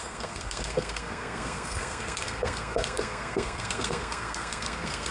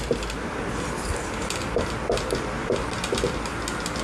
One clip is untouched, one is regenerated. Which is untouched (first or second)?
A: second